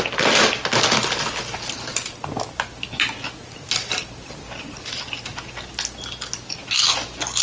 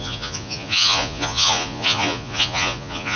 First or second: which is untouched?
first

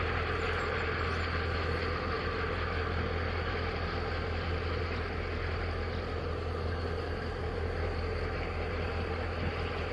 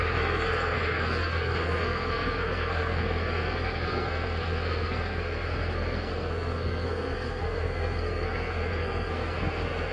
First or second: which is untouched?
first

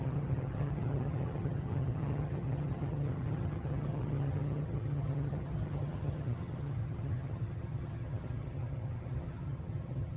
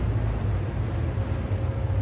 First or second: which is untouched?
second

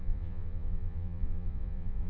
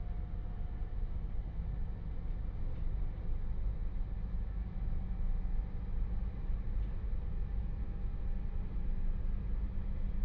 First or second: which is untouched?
second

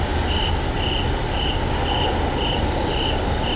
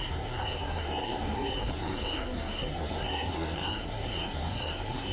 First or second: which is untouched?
first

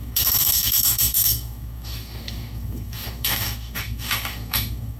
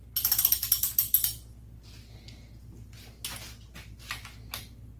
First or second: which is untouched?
second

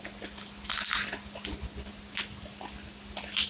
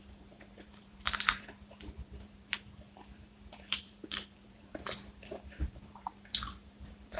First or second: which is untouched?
first